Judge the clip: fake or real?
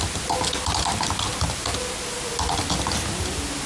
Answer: real